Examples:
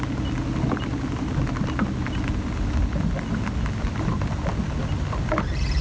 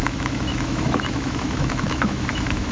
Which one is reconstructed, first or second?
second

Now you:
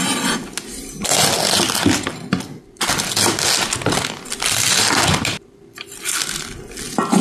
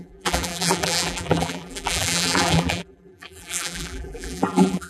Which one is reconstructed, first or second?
second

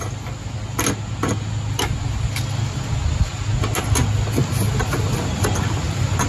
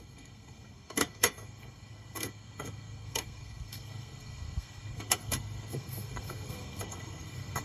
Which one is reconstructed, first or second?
second